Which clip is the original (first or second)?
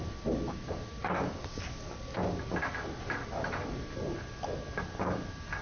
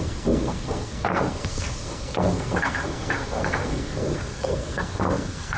first